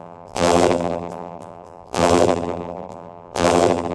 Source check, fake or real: fake